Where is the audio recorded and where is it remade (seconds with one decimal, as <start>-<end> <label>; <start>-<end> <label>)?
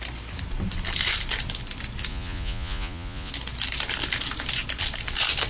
0.0-2.1 recorded; 2.1-3.3 remade; 3.3-5.5 recorded